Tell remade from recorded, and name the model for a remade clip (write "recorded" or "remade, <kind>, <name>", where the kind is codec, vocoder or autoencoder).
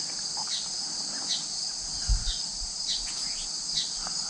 recorded